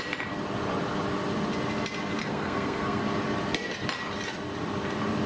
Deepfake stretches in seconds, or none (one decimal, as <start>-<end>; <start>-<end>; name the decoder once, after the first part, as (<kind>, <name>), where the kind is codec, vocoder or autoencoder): 2.2-3.0 (codec, SNAC)